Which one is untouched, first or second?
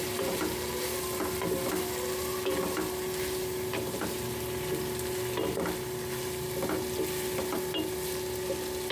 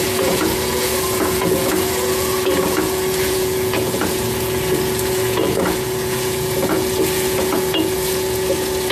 first